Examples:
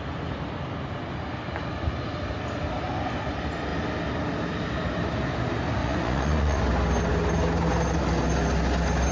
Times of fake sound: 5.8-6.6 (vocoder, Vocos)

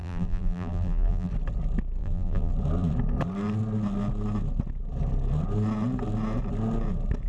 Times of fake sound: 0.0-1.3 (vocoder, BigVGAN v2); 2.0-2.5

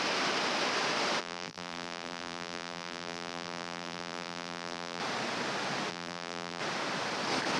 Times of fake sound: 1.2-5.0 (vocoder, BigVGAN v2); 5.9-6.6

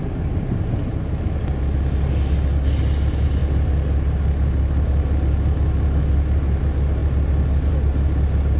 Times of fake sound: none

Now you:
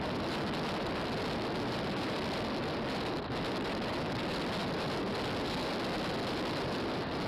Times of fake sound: none

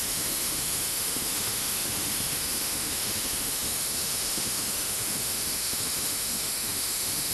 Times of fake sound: 0.0-7.3 (autoencoder, DAC-VAE)